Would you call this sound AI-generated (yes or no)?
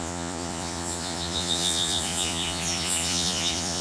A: yes